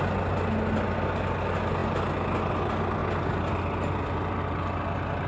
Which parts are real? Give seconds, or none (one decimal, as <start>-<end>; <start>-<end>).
0.0-5.3